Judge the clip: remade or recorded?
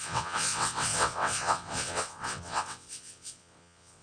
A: remade